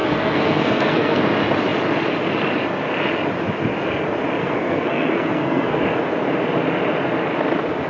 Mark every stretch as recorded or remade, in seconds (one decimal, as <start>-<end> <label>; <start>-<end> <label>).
0.0-1.2 remade; 1.2-4.4 recorded; 4.4-5.8 remade; 5.8-7.9 recorded